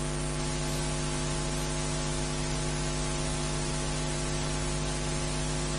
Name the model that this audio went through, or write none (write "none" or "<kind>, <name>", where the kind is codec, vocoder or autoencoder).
none